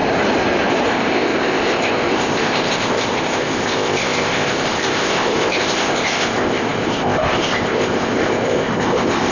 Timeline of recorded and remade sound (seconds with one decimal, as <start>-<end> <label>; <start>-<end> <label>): 0.0-0.9 recorded; 0.9-9.3 remade